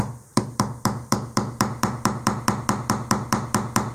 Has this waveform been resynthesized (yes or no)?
yes